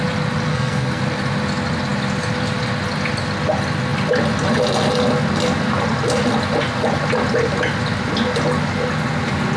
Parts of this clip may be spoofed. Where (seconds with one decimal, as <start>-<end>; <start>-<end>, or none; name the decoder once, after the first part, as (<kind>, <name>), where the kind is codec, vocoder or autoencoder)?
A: 0.5-1.0 (codec, SNAC)